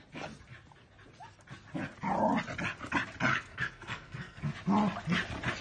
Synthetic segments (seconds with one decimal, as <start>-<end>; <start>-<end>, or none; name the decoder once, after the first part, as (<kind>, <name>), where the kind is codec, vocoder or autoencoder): 3.3-4.4 (codec, SNAC)